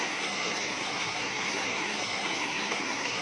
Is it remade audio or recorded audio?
remade